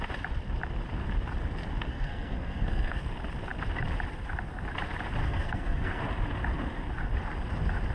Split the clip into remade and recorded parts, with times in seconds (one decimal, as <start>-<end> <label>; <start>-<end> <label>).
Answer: 0.0-1.9 recorded; 1.9-3.0 remade; 3.0-5.2 recorded; 5.2-6.0 remade; 6.0-7.9 recorded